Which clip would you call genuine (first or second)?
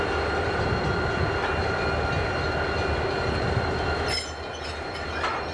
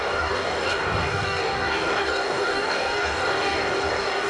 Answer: first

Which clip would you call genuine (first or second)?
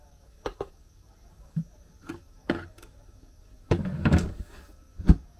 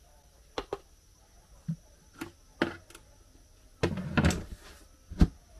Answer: second